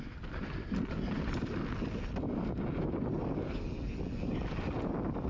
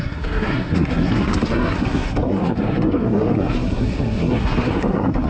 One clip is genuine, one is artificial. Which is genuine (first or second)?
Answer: first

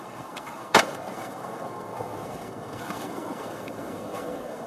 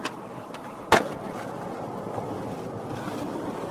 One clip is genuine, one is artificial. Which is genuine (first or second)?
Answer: second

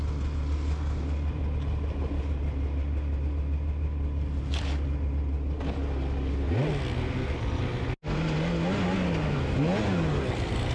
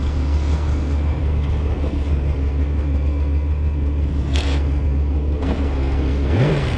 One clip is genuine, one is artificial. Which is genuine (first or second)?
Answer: first